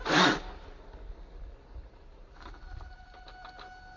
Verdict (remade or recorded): recorded